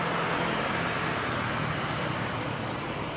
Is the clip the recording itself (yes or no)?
yes